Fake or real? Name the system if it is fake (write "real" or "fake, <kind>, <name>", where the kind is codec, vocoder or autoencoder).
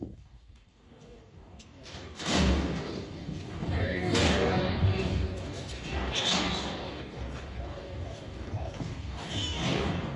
fake, codec, DAC